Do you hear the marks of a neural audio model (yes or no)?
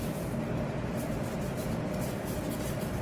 yes